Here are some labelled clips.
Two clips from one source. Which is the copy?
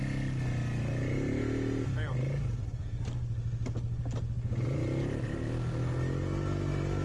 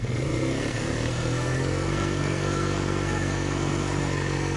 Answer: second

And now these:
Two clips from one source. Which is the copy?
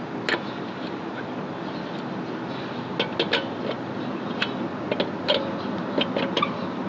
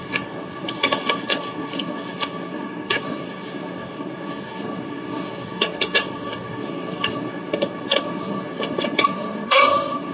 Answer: second